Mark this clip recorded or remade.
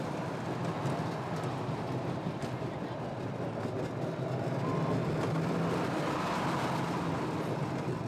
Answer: recorded